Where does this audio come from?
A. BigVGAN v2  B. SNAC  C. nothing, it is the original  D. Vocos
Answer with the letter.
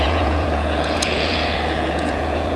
D